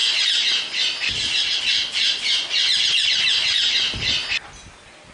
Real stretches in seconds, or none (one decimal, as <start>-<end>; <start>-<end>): 0.0-5.1